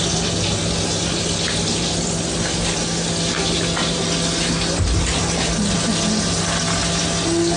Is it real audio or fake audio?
real